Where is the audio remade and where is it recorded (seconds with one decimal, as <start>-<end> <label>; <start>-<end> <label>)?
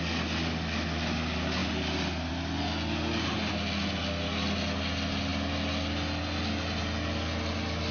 0.0-7.9 recorded